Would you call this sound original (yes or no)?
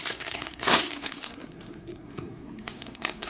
no